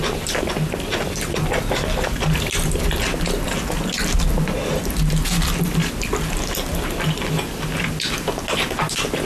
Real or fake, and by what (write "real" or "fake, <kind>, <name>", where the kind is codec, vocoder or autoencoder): real